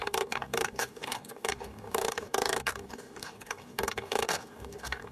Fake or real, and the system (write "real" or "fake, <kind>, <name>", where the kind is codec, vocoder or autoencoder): fake, codec, DAC